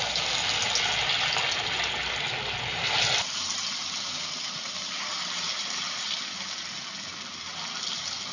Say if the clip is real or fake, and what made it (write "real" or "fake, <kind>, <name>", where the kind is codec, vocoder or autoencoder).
real